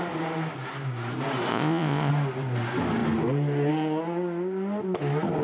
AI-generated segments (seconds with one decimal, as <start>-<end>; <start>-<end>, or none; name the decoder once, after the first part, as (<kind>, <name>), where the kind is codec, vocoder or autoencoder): 1.5-2.1 (vocoder, Vocos)